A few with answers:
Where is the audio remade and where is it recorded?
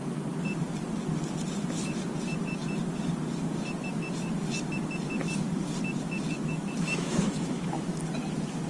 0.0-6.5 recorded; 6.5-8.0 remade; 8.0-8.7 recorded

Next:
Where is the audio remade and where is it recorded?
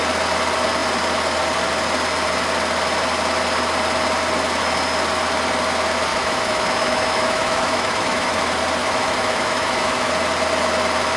0.0-6.1 recorded; 6.1-8.4 remade; 8.4-8.8 recorded; 8.8-10.1 remade; 10.1-11.2 recorded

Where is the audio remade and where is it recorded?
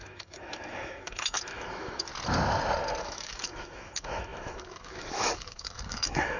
0.0-2.1 remade; 2.1-3.0 recorded; 3.0-6.4 remade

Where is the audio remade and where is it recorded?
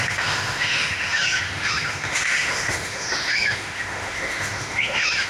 0.0-5.3 remade